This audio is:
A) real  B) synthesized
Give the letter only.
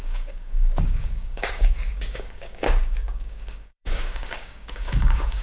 B